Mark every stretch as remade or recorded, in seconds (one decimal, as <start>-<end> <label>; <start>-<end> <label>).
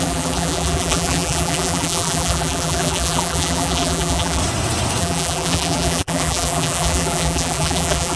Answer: 0.0-4.4 remade; 4.4-5.0 recorded; 5.0-8.2 remade